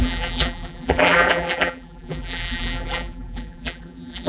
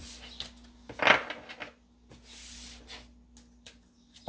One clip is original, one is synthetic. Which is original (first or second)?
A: second